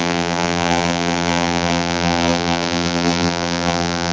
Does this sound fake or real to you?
fake